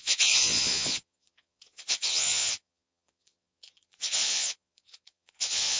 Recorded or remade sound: remade